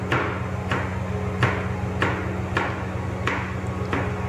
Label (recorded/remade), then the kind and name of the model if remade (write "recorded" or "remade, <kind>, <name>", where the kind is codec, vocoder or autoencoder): recorded